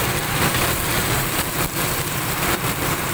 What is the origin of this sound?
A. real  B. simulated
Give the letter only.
B